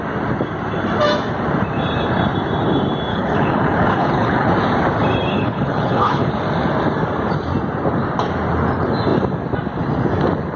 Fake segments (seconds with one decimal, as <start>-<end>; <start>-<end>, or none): 3.1-4.5; 5.3-6.3